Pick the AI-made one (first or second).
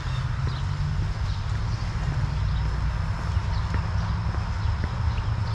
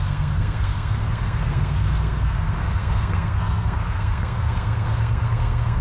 second